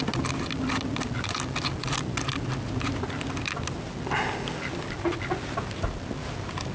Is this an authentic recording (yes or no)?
yes